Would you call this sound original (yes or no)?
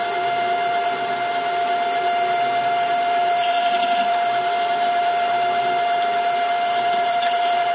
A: yes